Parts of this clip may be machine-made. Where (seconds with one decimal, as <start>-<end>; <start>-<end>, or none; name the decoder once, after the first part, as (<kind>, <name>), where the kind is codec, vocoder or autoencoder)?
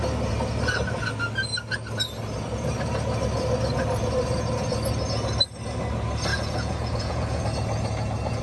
6.3-7.4 (vocoder, Vocos)